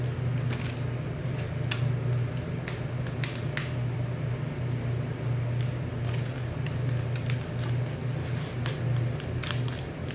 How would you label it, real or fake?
real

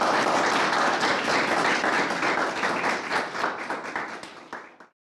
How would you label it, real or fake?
real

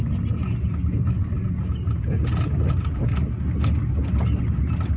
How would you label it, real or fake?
real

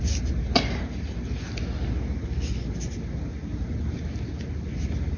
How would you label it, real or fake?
real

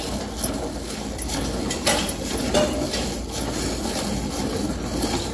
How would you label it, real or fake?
real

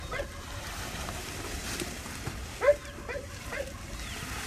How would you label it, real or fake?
real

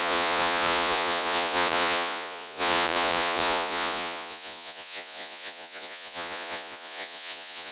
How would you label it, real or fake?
fake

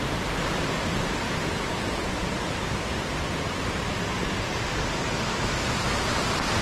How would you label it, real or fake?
real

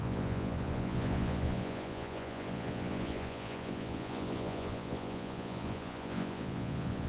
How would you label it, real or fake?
fake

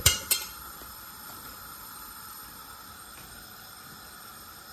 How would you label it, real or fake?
fake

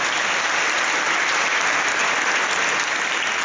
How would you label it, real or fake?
real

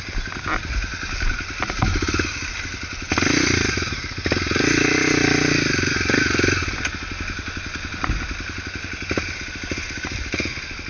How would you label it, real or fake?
real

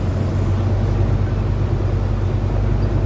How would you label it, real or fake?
real